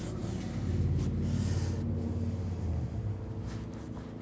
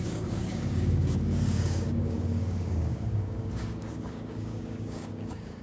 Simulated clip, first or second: second